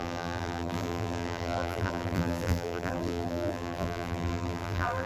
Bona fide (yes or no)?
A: no